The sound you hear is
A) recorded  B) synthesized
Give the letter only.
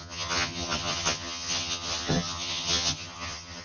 B